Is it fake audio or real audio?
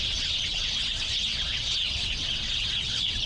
fake